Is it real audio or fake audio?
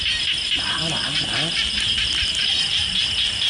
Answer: real